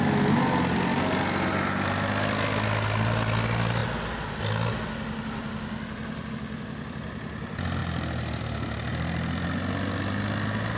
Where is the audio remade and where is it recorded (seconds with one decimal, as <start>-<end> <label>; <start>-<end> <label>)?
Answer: 0.0-10.8 recorded